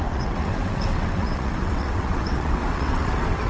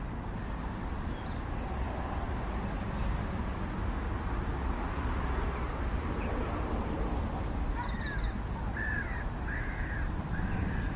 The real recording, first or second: second